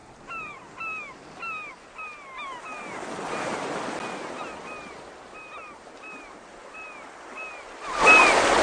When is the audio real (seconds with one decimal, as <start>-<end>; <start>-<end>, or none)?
0.0-8.6